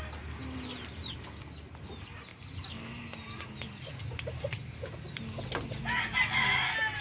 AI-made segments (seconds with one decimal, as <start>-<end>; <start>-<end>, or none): none